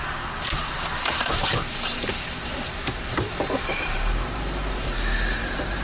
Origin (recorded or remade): remade